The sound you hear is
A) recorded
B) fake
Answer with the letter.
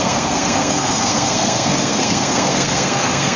B